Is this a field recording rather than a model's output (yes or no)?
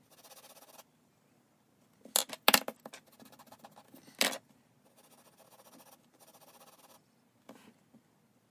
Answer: yes